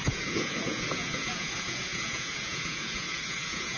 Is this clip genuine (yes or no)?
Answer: no